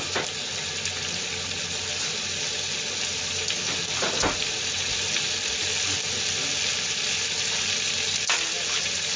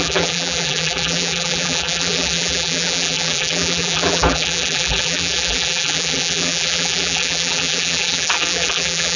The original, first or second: first